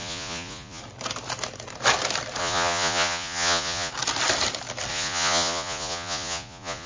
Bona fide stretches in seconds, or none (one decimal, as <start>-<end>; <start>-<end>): 0.8-2.4; 3.9-4.9